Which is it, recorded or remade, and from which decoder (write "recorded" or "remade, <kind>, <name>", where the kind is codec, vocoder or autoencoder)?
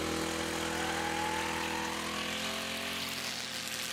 recorded